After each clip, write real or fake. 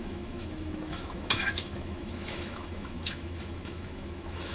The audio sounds fake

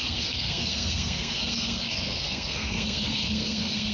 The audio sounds fake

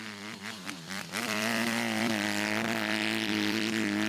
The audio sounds fake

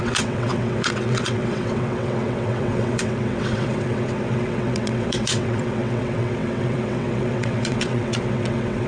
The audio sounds fake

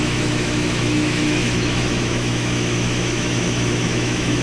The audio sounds fake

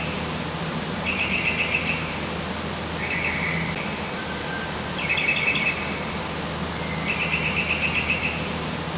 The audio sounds real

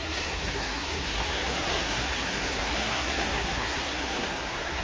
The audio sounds fake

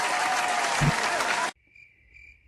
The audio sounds real